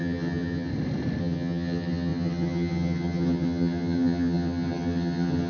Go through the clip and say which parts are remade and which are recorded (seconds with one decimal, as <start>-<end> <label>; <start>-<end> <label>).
0.0-0.7 remade; 0.7-1.2 recorded; 1.2-5.5 remade